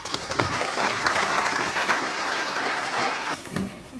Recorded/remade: remade